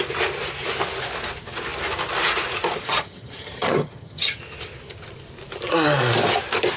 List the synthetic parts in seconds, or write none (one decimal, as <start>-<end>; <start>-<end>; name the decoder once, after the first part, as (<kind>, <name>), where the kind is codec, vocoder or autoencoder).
2.8-4.4 (vocoder, HiFi-GAN)